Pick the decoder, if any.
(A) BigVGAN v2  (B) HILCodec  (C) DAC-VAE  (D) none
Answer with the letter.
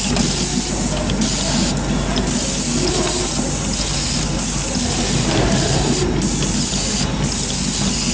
D